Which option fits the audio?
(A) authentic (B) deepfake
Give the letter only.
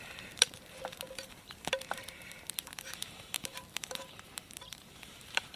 B